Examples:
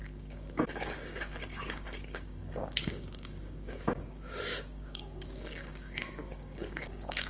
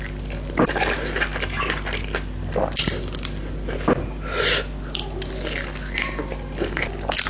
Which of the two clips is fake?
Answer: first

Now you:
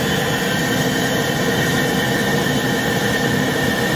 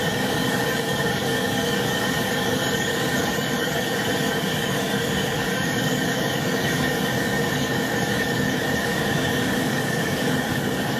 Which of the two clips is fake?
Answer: second